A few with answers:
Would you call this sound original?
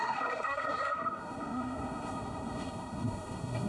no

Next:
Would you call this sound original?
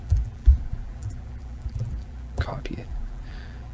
no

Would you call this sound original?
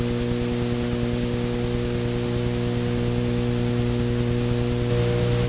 yes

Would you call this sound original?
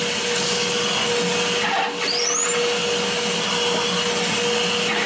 yes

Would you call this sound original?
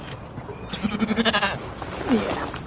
yes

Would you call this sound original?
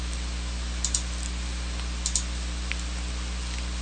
yes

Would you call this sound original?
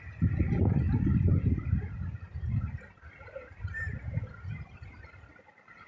no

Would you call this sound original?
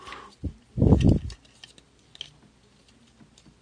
yes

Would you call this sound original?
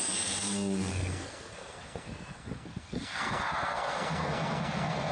no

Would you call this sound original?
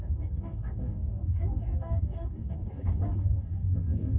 no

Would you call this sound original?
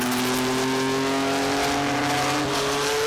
yes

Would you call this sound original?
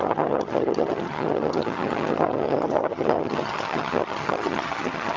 no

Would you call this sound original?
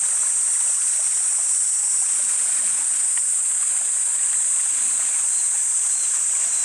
yes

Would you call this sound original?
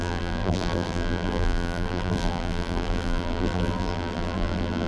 no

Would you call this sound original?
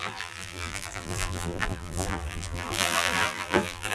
no